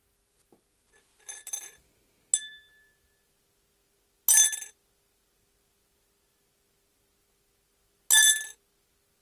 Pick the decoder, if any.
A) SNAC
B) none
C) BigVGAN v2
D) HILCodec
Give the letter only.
B